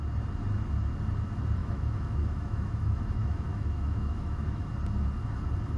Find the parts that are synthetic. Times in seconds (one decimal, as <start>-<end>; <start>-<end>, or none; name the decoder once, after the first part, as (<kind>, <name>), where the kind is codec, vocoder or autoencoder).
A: 1.6-4.7 (autoencoder, DAC-VAE)